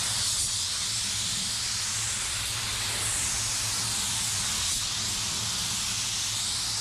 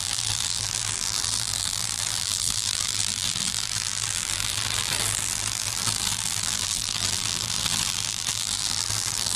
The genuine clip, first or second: first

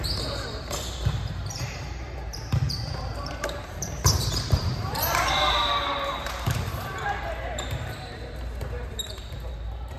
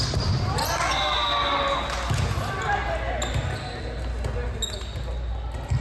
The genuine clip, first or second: second